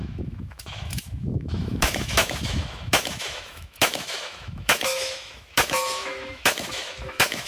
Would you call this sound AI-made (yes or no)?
yes